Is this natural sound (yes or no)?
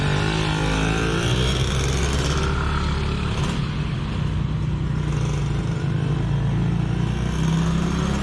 yes